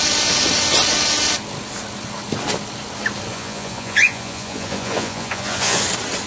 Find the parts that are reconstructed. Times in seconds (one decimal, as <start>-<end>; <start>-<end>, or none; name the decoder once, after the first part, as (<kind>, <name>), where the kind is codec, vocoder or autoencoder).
3.3-5.8 (vocoder, Vocos)